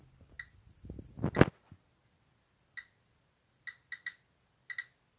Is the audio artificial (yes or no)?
no